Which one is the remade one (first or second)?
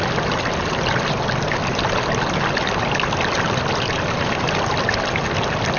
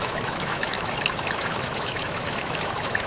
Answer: second